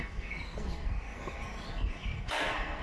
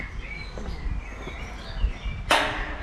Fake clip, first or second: first